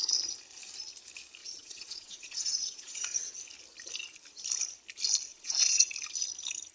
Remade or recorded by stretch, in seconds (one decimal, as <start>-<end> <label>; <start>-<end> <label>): 0.0-1.4 recorded; 1.4-3.4 remade; 3.4-5.3 recorded; 5.3-5.9 remade; 5.9-6.7 recorded